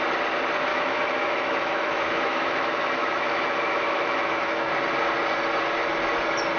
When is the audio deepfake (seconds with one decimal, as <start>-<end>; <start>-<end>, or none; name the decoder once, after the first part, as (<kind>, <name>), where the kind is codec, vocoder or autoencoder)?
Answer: 0.7-4.7 (autoencoder, DAC-VAE)

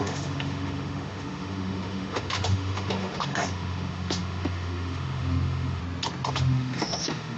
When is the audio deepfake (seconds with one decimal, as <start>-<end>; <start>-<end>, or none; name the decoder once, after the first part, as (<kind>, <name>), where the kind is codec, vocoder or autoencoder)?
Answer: 0.0-5.8 (autoencoder, DAC-VAE); 6.3-7.4

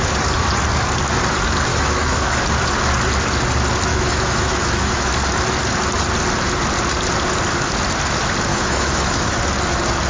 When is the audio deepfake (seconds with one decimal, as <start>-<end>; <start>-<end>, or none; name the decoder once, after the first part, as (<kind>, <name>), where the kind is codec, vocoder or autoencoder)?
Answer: 1.7-2.4 (autoencoder, DAC-VAE); 3.9-5.1; 8.5-9.4

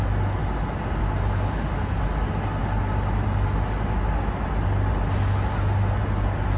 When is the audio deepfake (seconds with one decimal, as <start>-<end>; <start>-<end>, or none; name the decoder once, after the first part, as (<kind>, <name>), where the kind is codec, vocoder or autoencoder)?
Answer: none

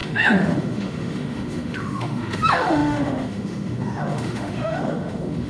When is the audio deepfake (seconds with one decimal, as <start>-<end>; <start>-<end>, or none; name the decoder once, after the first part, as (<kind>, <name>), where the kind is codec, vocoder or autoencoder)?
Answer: 0.0-5.5 (autoencoder, DAC-VAE)

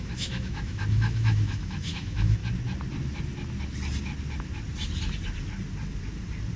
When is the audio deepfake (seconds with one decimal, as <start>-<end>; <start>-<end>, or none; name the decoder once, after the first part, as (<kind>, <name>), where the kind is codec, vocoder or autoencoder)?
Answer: 0.0-2.4 (autoencoder, DAC-VAE)